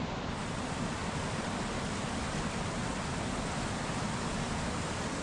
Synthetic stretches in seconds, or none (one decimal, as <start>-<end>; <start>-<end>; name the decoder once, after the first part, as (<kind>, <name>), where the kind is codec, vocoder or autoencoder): none